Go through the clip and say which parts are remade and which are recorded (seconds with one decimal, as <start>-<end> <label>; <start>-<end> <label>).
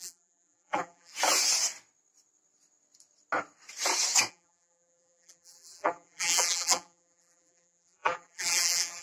0.0-1.1 remade; 1.1-4.3 recorded; 4.3-9.0 remade